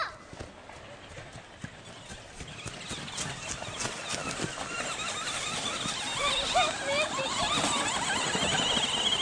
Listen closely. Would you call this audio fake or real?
real